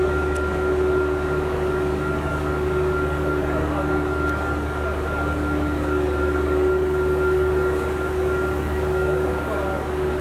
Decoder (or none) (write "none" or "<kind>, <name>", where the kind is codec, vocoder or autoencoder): codec, DAC